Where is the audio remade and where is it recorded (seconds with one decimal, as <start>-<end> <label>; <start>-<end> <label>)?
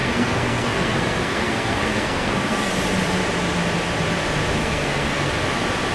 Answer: 0.0-2.7 remade; 2.7-4.6 recorded; 4.6-5.3 remade; 5.3-5.9 recorded